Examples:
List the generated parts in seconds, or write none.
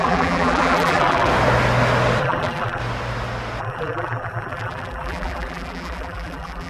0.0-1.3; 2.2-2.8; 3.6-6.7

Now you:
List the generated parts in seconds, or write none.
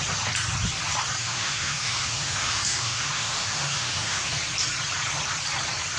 1.2-4.3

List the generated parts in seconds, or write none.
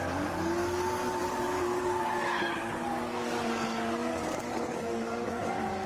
0.0-5.9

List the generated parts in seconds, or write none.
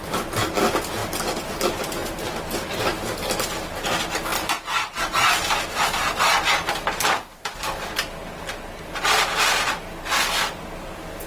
none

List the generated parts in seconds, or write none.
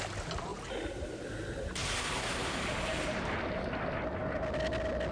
0.5-1.3; 1.8-3.4